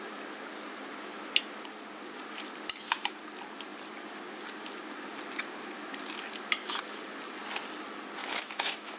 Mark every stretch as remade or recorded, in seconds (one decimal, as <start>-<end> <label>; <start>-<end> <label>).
0.0-8.2 recorded; 8.2-9.0 remade